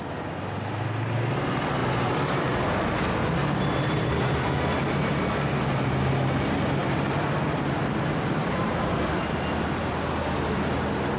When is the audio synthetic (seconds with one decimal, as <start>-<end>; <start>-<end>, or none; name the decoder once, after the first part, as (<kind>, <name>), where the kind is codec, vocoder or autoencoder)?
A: 1.8-2.6 (vocoder, BigVGAN v2); 3.4-4.1; 8.4-9.0